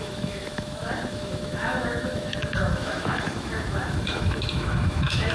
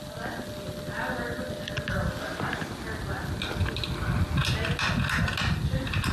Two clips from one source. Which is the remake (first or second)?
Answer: first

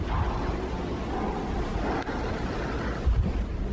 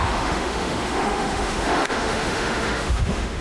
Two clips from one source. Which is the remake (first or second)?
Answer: second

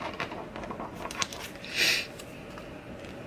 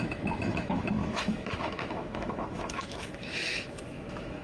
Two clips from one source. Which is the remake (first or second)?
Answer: second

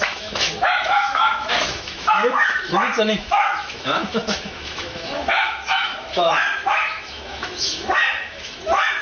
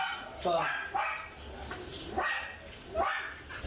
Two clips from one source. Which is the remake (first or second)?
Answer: first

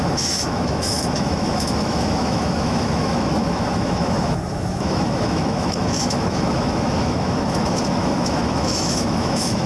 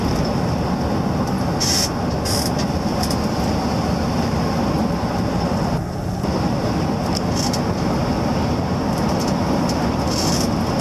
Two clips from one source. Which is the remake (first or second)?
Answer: first